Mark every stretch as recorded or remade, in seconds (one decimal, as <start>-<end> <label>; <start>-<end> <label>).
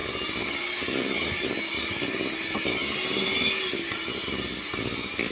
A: 0.0-5.3 recorded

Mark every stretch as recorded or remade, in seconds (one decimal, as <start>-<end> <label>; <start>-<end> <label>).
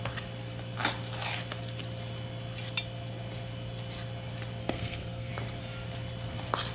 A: 0.0-4.6 recorded; 4.6-5.3 remade; 5.3-6.7 recorded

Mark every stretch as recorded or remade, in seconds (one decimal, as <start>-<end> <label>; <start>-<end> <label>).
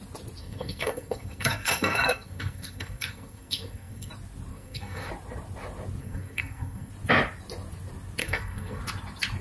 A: 0.0-0.4 recorded; 0.4-4.1 remade; 4.1-4.5 recorded; 4.5-5.1 remade; 5.1-6.0 recorded; 6.0-6.9 remade; 6.9-8.2 recorded; 8.2-8.8 remade; 8.8-9.4 recorded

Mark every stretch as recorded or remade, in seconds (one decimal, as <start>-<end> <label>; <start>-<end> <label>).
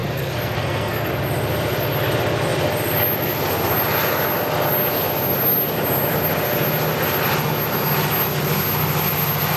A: 0.0-1.1 remade; 1.1-9.6 recorded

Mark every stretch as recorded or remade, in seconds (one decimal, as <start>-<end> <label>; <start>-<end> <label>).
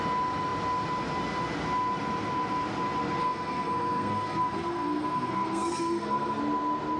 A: 0.0-3.2 recorded; 3.2-6.4 remade; 6.4-7.0 recorded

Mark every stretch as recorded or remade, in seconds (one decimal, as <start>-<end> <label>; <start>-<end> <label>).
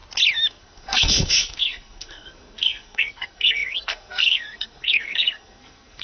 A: 0.0-0.5 recorded; 0.5-6.0 remade